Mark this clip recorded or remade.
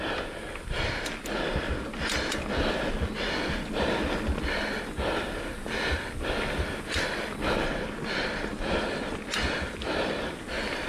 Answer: recorded